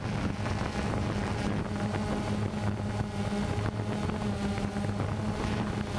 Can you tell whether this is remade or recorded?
recorded